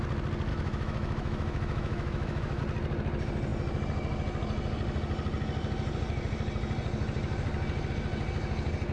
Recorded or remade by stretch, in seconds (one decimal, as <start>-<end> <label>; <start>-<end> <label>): 0.0-0.5 recorded; 0.5-2.6 remade; 2.6-8.9 recorded